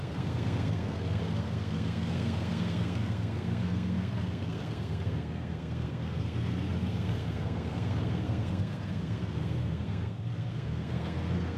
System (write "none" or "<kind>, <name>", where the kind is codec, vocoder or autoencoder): codec, SNAC